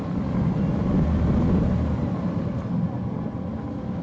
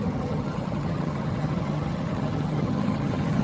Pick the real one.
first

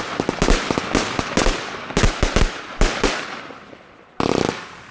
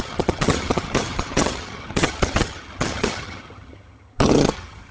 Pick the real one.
first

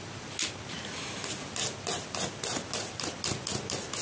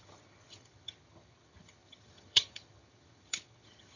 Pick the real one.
first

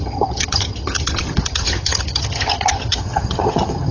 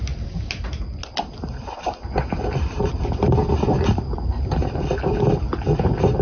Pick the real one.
second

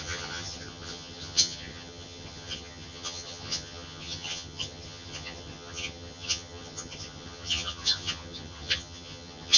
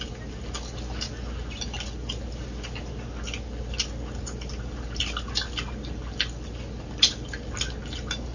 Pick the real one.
second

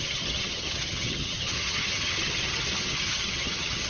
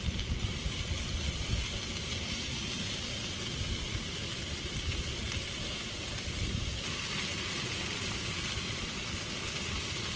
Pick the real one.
second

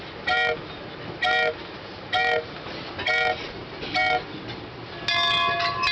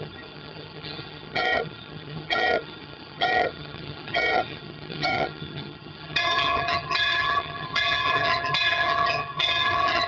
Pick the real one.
first